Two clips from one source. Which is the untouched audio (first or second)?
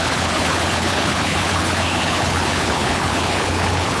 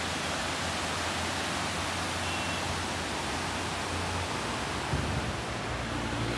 second